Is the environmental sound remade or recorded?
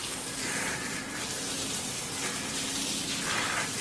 recorded